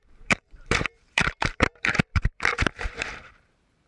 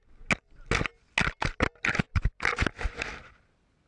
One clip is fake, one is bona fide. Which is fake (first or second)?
first